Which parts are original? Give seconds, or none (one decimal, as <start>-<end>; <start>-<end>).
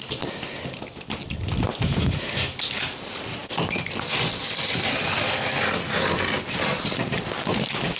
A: 0.0-8.0